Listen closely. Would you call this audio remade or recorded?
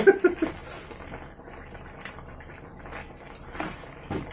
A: recorded